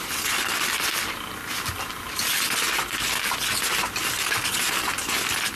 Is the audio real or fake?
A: real